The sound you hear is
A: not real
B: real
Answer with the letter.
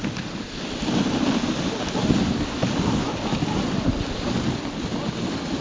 B